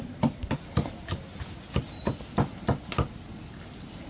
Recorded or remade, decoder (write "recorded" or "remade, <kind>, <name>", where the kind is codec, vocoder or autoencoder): recorded